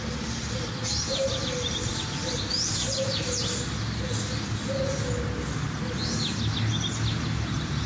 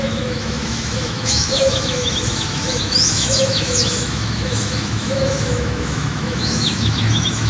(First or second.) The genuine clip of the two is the first